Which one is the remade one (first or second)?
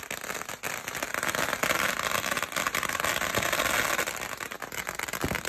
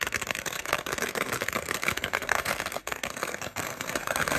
second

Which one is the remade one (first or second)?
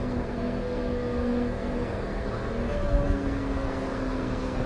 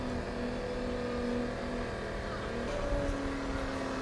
first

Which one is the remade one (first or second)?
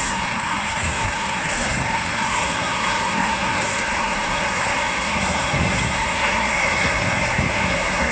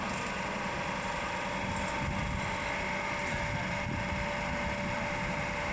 first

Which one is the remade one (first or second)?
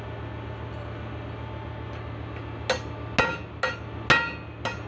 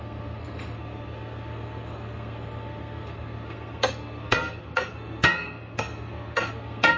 second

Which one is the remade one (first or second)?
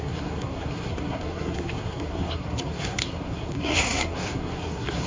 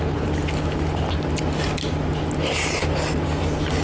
first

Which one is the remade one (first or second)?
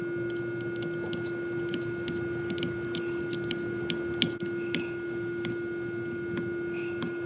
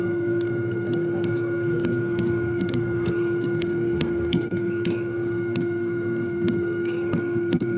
second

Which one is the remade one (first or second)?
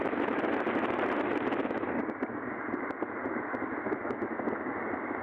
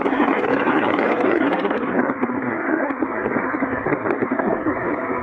second